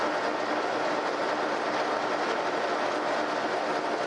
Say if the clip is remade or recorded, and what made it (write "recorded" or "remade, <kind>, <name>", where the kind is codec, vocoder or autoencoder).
recorded